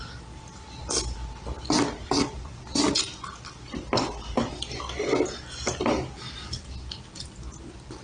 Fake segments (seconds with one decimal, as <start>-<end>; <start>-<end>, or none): none